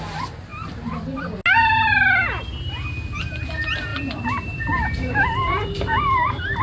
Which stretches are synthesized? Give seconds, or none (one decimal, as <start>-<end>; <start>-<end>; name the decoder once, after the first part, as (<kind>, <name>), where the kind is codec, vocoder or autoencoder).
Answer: 3.9-6.6 (vocoder, BigVGAN v2)

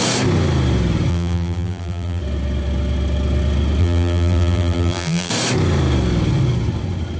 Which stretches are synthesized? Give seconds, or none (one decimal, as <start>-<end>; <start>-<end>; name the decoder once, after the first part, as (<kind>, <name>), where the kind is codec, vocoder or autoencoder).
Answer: 1.1-2.2 (vocoder, BigVGAN v2); 3.8-5.3